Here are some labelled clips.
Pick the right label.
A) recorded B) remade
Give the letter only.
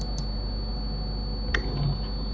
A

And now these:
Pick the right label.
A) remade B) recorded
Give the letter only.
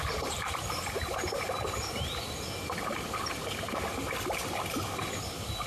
B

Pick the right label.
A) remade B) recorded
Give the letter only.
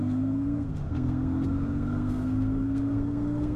A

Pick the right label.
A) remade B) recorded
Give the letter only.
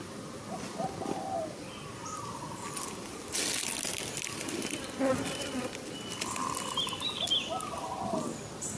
B